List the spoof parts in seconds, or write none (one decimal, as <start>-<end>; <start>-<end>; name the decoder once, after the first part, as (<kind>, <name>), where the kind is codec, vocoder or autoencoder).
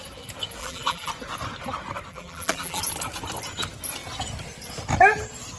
0.6-1.1 (vocoder, BigVGAN v2); 2.1-2.8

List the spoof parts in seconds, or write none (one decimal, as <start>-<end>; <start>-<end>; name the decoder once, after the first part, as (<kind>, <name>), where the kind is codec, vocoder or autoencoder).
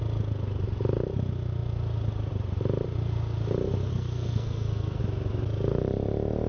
3.9-5.0 (codec, SNAC)